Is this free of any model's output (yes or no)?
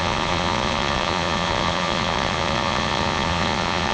no